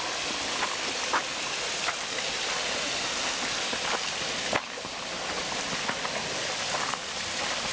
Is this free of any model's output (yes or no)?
yes